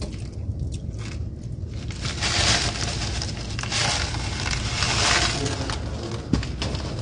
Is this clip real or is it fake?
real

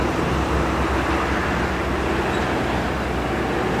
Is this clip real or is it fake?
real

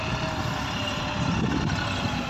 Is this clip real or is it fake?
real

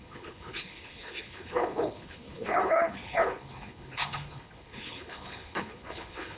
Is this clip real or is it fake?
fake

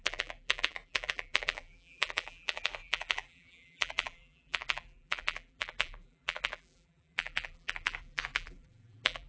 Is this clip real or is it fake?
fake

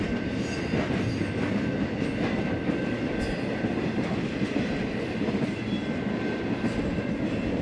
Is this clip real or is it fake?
real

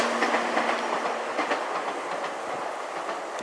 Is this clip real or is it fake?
real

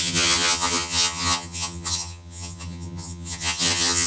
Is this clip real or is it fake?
fake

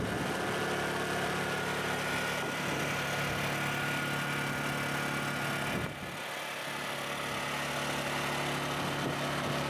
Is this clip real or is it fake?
real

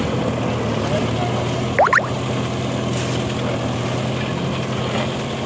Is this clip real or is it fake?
real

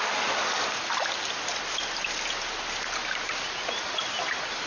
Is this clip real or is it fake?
real